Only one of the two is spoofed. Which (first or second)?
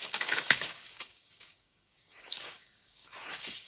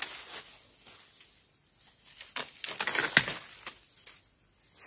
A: first